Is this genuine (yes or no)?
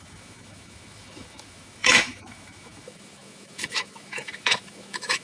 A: no